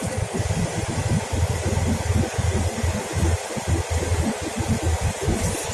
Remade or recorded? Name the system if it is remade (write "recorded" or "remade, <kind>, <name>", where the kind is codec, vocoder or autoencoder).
recorded